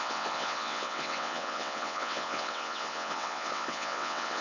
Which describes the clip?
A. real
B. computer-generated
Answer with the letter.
B